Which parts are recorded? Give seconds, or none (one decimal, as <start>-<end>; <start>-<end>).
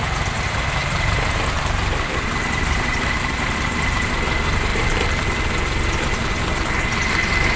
0.0-0.8; 4.1-4.7; 5.5-7.6